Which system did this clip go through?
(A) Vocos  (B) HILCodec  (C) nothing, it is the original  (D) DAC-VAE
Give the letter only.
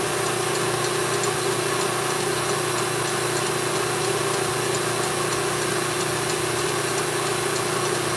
C